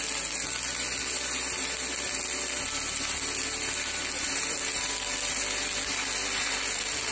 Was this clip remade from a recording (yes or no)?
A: no